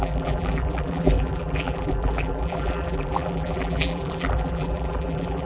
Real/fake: fake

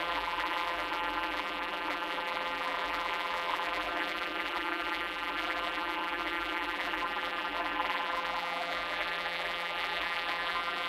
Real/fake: fake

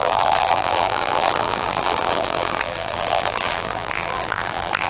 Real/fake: fake